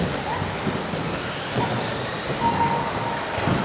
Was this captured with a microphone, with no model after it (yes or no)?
yes